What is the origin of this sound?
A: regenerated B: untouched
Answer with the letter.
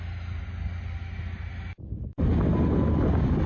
B